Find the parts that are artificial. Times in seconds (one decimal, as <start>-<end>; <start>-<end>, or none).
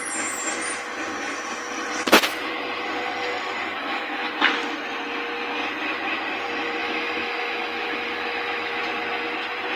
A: 3.8-4.3; 6.8-8.8